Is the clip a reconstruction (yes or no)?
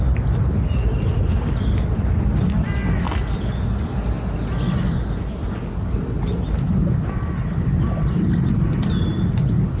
no